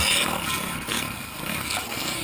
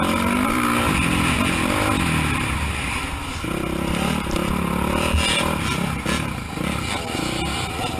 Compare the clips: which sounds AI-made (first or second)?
first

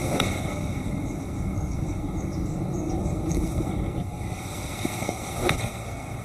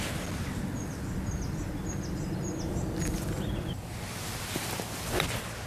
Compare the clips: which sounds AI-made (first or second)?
first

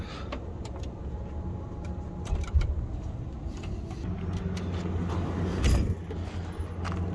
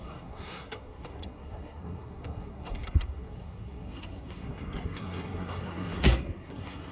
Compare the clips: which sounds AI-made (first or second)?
second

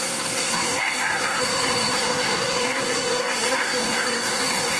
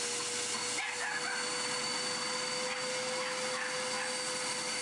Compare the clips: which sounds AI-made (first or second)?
first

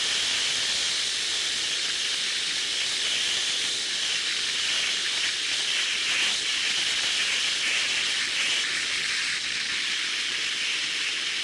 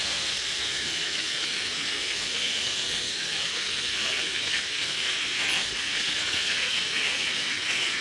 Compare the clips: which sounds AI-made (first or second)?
second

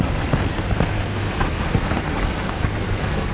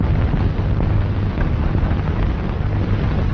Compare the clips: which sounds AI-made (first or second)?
first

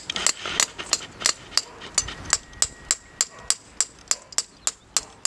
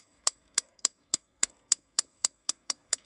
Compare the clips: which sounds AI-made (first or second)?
second